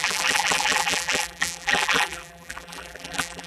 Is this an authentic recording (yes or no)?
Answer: no